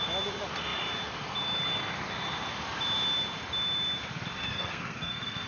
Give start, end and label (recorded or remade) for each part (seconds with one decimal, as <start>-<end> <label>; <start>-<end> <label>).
0.0-4.5 recorded; 4.5-5.5 remade